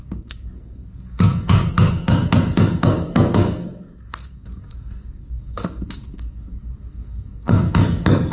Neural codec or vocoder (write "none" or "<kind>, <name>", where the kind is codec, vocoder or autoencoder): codec, SNAC